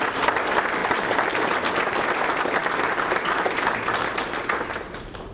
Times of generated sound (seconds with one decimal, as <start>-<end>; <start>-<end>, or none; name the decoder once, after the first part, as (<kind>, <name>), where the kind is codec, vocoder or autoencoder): none